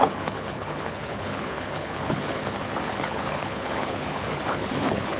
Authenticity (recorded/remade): remade